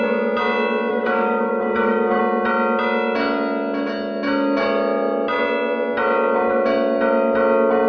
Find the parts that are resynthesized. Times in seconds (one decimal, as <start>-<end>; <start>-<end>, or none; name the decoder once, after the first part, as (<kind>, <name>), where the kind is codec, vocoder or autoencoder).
0.9-2.2 (codec, DAC)